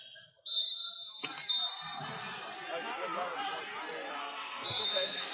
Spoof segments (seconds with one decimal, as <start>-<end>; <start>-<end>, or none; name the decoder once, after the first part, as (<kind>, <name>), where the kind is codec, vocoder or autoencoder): 4.2-5.3 (codec, SNAC)